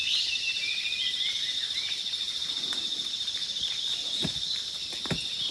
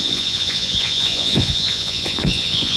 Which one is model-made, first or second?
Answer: second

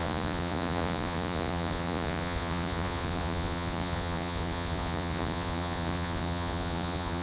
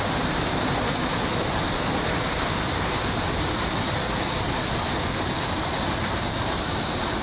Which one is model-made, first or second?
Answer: first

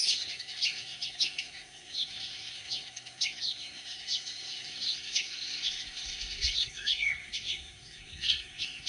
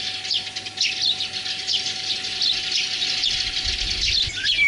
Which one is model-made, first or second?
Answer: first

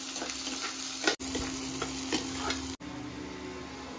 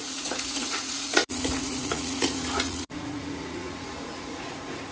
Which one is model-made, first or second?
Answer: second